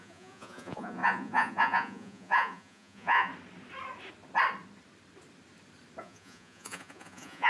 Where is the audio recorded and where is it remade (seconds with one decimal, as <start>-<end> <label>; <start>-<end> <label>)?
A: 0.0-3.3 remade; 3.3-6.0 recorded; 6.0-7.5 remade